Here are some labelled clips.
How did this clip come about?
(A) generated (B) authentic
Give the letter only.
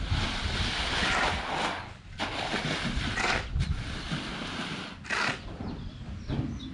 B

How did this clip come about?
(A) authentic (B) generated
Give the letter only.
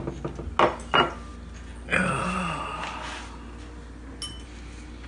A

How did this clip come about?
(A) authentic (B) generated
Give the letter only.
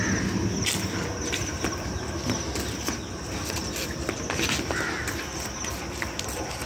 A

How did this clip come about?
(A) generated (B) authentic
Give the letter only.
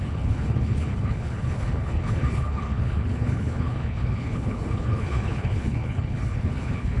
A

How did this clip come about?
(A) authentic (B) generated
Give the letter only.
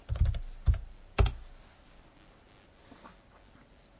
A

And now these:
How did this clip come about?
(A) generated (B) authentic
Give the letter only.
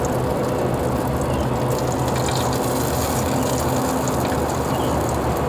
B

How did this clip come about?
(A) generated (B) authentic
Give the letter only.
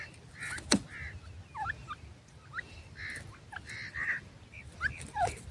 B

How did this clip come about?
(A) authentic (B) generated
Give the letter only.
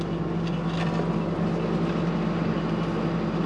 A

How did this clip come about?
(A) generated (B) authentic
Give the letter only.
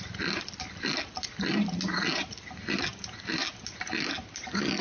B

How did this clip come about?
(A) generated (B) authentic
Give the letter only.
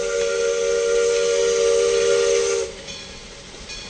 B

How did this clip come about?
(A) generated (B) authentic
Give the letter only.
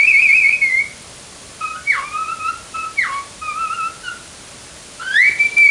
B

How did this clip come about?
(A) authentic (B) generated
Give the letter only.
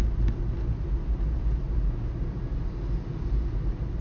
A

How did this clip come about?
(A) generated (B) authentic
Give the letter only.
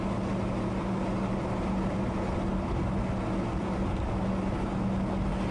B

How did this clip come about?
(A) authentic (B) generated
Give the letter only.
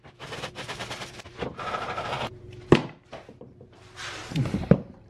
B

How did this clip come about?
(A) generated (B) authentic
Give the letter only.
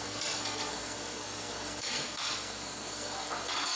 A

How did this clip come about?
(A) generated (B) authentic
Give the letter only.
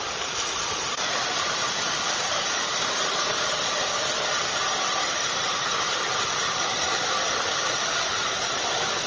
B